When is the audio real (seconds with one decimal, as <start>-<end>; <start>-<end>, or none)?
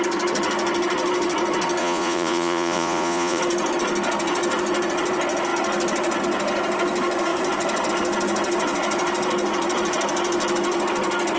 0.0-1.8; 3.4-11.4